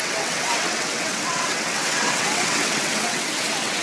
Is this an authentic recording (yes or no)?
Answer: no